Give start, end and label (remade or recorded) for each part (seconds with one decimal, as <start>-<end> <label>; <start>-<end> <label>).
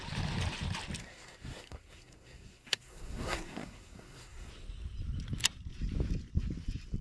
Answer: 0.0-1.0 recorded; 1.0-4.5 remade; 4.5-7.0 recorded